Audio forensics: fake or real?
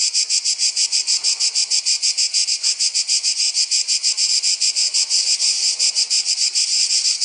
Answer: fake